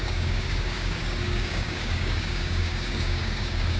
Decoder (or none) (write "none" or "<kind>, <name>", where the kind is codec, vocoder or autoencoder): codec, DAC